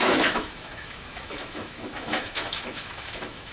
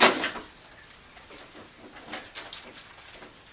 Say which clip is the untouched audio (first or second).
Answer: second